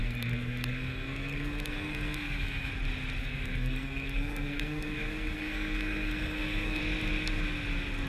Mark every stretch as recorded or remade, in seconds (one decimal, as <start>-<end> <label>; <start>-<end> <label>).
0.0-2.7 remade; 2.7-3.2 recorded; 3.2-6.8 remade; 6.8-8.1 recorded